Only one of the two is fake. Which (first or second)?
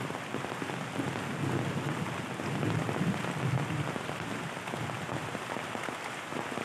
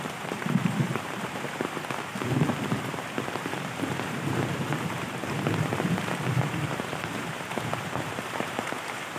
second